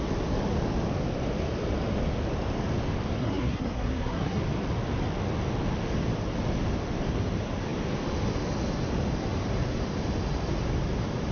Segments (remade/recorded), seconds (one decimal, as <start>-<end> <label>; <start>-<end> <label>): 0.0-3.2 recorded; 3.2-4.4 remade; 4.4-11.3 recorded